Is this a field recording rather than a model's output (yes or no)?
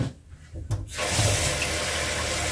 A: yes